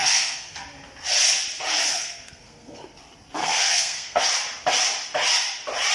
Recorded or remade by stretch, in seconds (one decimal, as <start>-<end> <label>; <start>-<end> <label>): 0.0-0.6 remade; 0.6-1.9 recorded; 1.9-2.8 remade; 2.8-3.4 recorded; 3.4-4.2 remade; 4.2-5.9 recorded